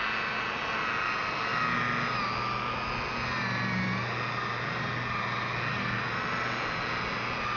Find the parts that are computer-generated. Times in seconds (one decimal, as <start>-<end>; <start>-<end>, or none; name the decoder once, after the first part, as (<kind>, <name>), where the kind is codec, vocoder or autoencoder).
none